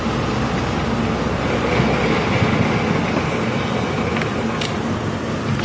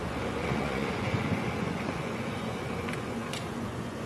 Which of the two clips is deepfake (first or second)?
second